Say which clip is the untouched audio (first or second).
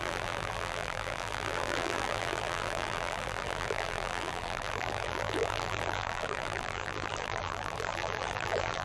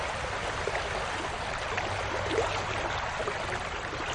second